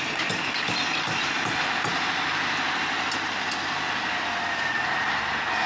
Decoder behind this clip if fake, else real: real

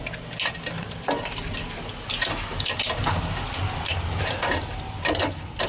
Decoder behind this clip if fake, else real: real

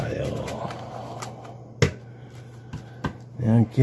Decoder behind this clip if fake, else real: real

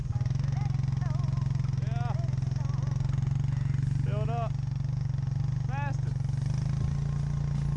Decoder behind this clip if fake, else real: real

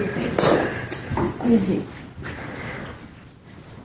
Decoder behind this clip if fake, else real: real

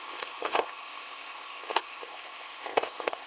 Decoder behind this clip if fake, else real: fake, codec, ZipCodec